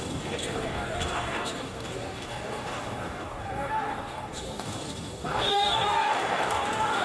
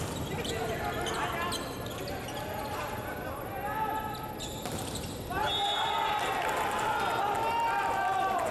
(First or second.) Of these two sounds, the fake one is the first